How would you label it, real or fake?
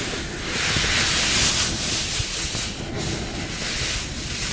real